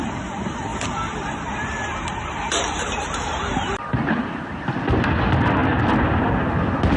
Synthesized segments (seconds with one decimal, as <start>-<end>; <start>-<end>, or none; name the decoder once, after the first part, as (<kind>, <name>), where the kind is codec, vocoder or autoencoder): none